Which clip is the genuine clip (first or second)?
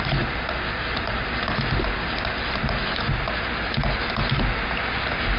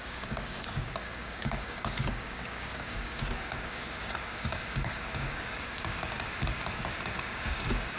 first